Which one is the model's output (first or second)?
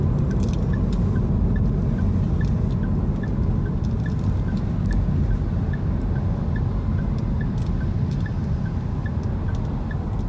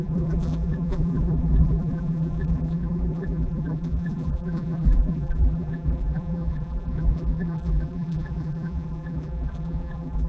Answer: second